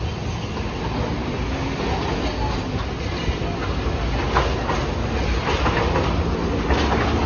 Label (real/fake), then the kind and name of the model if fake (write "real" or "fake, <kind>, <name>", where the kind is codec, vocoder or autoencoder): real